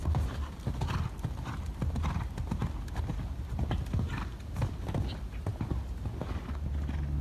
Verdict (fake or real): real